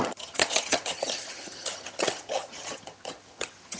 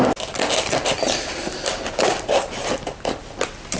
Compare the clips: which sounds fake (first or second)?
first